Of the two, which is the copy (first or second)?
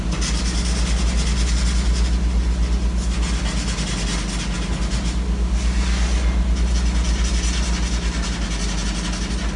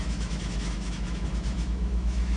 second